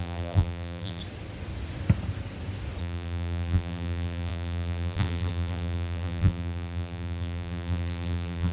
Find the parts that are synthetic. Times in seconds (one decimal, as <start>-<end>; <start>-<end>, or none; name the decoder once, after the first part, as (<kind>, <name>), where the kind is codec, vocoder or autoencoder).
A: 0.0-1.0 (vocoder, BigVGAN v2); 2.8-8.5